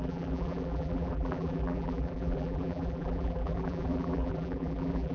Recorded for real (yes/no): no